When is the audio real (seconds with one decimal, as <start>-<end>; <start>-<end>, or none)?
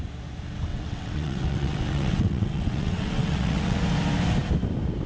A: 0.0-0.7; 3.8-5.1